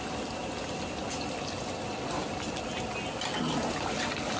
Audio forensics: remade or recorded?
recorded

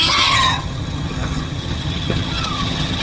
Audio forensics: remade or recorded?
remade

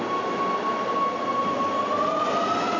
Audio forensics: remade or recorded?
recorded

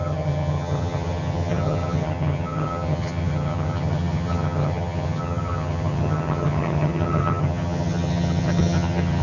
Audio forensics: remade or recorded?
remade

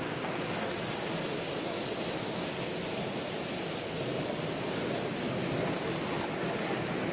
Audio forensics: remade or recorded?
recorded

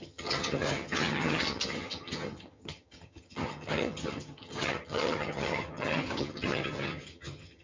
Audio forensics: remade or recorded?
remade